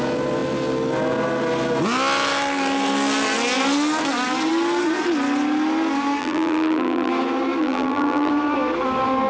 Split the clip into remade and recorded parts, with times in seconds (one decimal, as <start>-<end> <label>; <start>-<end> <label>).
0.0-6.2 recorded; 6.2-7.1 remade; 7.1-7.6 recorded; 7.6-8.3 remade; 8.3-9.3 recorded